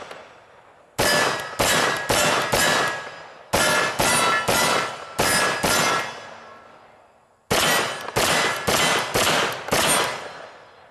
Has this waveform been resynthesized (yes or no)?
no